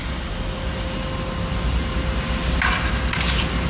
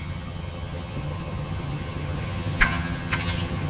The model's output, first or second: second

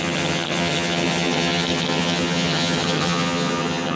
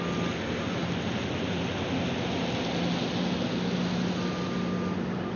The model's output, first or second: first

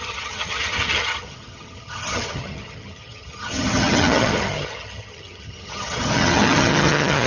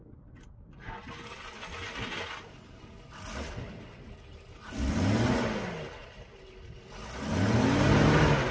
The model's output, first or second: first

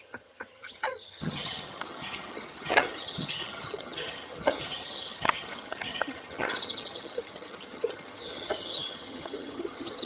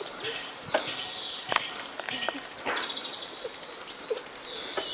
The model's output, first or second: first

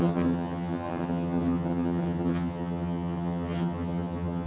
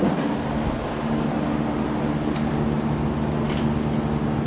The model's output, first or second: first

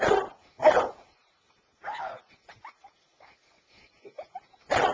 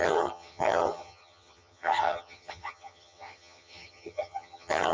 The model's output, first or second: second